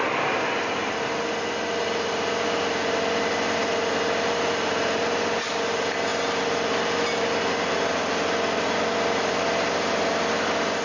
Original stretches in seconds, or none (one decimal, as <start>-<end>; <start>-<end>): 0.0-10.8